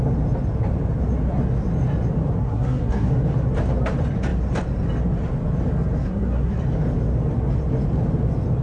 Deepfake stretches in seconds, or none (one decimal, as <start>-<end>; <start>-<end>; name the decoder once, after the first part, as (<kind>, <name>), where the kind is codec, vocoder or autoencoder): 2.4-3.1 (codec, SNAC); 6.0-6.6